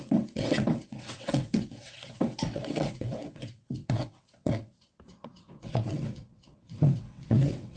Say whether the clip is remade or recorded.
remade